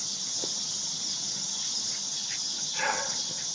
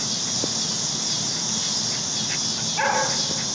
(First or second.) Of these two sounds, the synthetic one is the first